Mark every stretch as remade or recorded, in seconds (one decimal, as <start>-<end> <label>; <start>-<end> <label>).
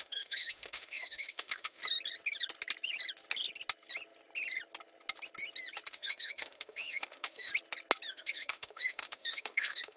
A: 0.0-1.8 remade; 1.8-5.9 recorded; 5.9-7.5 remade; 7.5-8.1 recorded; 8.1-10.0 remade